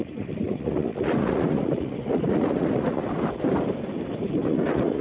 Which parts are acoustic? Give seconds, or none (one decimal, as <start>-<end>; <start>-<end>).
3.0-4.4